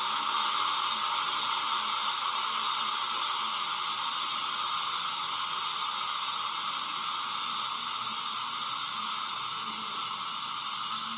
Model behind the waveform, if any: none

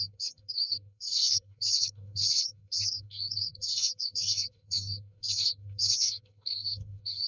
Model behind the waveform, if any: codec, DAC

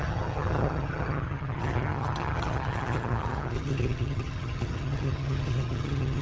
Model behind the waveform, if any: vocoder, HiFi-GAN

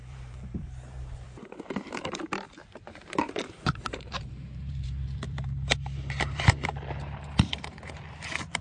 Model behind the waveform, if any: vocoder, BigVGAN v2